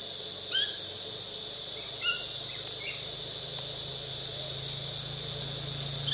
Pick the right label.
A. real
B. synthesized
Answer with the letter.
A